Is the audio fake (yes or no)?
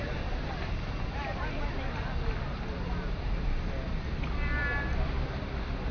no